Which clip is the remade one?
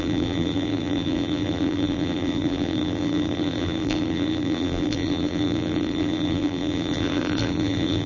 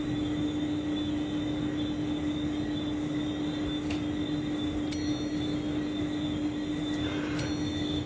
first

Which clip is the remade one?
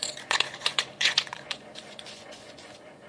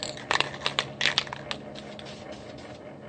first